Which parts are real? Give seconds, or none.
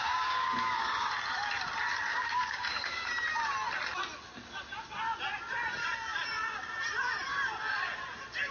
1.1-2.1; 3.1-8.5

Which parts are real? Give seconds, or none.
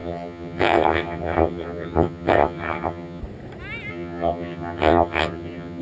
3.2-3.9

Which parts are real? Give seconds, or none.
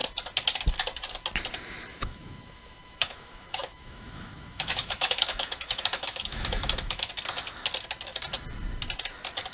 0.0-1.9; 7.1-9.5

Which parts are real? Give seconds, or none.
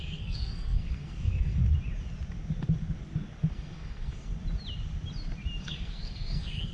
1.6-3.5; 4.3-5.6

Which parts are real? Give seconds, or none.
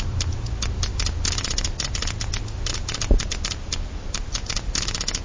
0.0-5.2